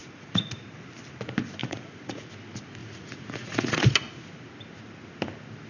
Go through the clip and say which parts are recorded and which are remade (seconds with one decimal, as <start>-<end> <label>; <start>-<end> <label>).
0.0-0.5 remade; 0.5-1.6 recorded; 1.6-2.3 remade; 2.3-2.8 recorded; 2.8-3.8 remade; 3.8-5.7 recorded